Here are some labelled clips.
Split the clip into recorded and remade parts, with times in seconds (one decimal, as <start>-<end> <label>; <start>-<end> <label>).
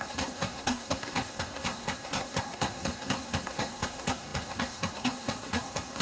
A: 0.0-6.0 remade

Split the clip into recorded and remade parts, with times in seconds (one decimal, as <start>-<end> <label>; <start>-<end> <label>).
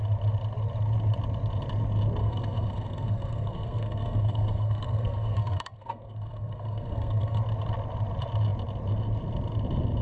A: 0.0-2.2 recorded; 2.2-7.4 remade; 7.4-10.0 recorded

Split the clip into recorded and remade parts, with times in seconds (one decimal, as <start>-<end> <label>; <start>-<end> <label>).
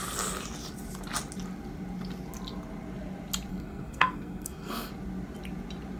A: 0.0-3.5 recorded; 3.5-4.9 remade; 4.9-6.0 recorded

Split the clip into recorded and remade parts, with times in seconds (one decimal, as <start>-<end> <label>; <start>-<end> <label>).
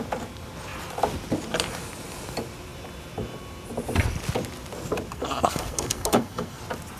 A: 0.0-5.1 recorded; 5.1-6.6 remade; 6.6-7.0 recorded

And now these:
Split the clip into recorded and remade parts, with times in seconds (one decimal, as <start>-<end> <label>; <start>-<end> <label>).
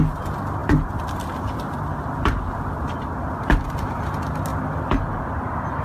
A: 0.0-5.8 recorded